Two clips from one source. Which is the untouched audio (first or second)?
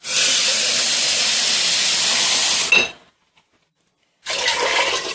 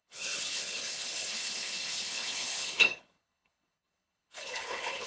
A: first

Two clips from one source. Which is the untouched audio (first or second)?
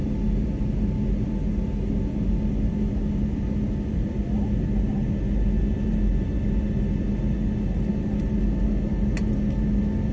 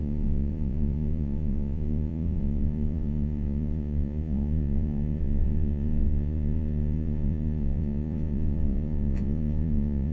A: first